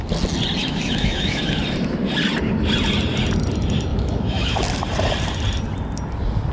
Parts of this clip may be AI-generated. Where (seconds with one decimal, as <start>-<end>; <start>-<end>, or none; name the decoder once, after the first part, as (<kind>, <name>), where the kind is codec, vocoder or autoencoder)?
0.6-1.6 (autoencoder, DAC-VAE); 3.9-4.6

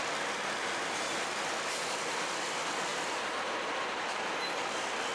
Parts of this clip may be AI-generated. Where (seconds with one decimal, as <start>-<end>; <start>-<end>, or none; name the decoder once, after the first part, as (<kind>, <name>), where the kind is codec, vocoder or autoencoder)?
2.9-4.5 (vocoder, BigVGAN v2)

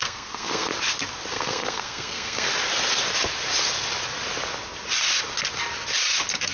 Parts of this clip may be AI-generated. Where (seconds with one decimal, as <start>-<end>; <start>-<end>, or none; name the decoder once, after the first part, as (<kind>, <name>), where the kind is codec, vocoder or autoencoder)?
0.0-0.7 (codec, SNAC); 1.3-2.5

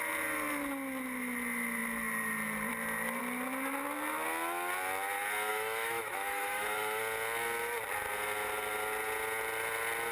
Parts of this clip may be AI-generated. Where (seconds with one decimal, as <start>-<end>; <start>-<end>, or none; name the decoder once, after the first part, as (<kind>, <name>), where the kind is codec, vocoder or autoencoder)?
5.5-7.0 (autoencoder, DAC-VAE)

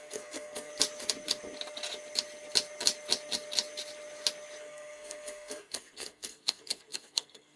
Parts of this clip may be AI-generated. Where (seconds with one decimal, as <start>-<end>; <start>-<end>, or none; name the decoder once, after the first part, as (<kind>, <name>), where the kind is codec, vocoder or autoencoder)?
0.0-0.7 (codec, SNAC); 4.6-7.6